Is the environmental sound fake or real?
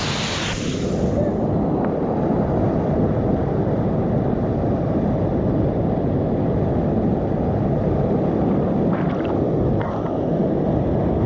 real